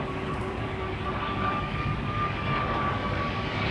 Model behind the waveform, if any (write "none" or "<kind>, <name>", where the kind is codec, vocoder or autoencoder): codec, DAC